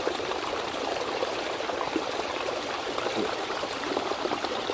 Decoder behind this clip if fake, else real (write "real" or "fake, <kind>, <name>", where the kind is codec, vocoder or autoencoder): fake, vocoder, BigVGAN v2